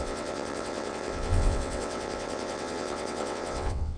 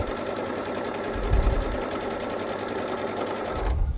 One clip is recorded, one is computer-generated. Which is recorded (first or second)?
second